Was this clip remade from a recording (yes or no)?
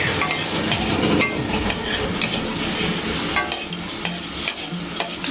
no